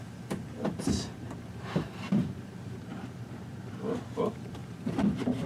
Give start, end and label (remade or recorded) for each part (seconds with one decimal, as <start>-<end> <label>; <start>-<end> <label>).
0.0-5.5 remade